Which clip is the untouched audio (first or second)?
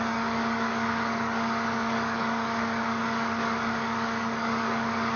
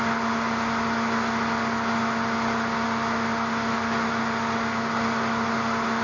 second